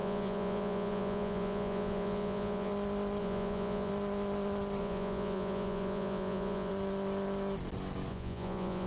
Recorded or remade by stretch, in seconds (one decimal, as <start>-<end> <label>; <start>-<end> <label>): 0.0-2.7 remade; 2.7-3.2 recorded; 3.2-3.9 remade; 3.9-4.8 recorded; 4.8-6.7 remade; 6.7-8.1 recorded; 8.1-8.9 remade